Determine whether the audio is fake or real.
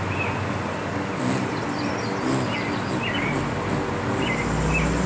real